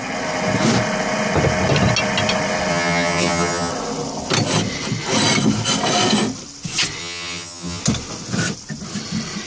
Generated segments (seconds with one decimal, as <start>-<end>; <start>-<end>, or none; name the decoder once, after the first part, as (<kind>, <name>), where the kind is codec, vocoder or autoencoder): 2.7-3.7 (vocoder, HiFi-GAN); 7.0-7.8